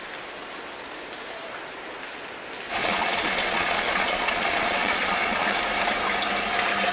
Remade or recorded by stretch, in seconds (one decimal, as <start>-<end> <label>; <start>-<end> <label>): 0.0-2.8 recorded; 2.8-5.6 remade; 5.6-6.9 recorded